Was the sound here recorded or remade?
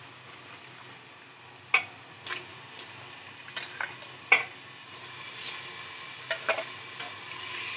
recorded